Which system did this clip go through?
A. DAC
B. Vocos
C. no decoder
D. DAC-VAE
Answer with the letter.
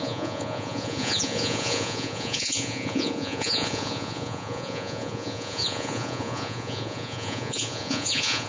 B